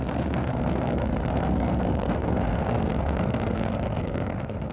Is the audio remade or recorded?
remade